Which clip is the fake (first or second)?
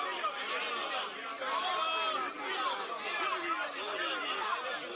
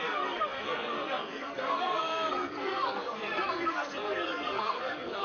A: second